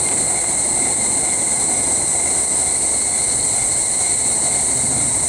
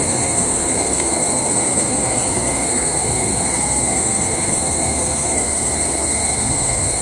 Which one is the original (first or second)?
first